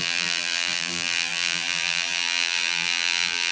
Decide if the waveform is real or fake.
fake